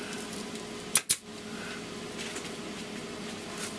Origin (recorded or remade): recorded